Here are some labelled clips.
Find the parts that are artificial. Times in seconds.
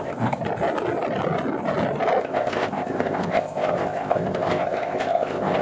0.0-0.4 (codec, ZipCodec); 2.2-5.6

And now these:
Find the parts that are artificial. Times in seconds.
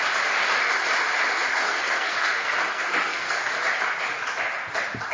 1.5-3.4 (codec, SNAC)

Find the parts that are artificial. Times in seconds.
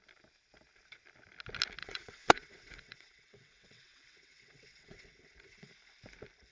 1.8-5.7 (vocoder, WaveNeXt)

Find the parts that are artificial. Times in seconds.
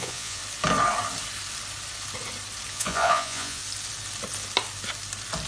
0.0-0.4 (vocoder, Vocos); 2.7-3.6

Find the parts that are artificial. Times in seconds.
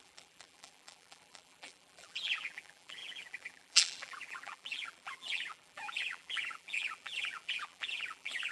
0.0-8.5 (vocoder, BigVGAN v2)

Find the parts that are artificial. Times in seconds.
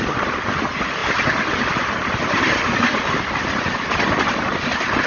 none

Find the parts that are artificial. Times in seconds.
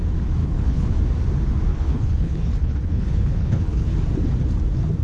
0.4-1.0 (codec, HILCodec); 1.7-3.9